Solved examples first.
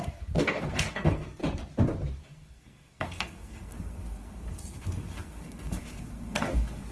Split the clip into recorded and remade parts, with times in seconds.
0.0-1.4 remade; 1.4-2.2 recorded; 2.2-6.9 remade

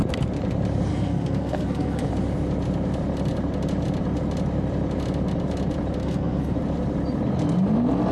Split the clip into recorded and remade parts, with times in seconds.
0.0-0.9 recorded; 0.9-2.1 remade; 2.1-6.0 recorded; 6.0-6.5 remade; 6.5-8.1 recorded

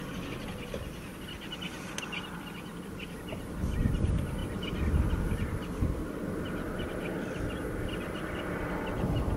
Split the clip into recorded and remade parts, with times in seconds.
0.0-9.4 recorded

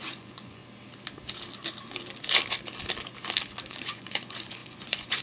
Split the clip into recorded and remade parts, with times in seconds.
0.0-0.6 remade; 0.6-3.7 recorded; 3.7-5.2 remade